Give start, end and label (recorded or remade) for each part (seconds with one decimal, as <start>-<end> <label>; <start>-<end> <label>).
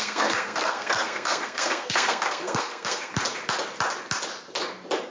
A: 0.0-3.1 remade; 3.1-5.1 recorded